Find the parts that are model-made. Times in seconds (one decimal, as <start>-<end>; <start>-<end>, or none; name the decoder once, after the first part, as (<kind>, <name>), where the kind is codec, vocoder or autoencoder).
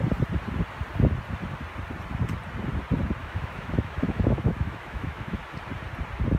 3.2-5.4 (autoencoder, DAC-VAE)